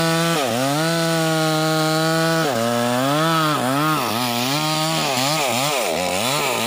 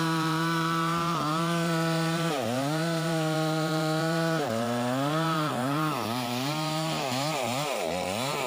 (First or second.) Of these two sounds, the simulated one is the second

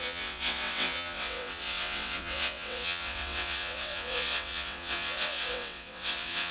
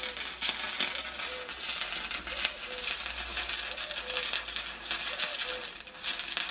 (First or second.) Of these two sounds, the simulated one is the first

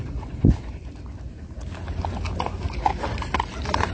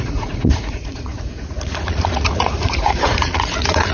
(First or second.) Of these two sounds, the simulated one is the second